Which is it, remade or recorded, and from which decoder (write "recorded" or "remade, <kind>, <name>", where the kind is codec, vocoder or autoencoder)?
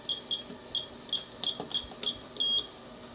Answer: recorded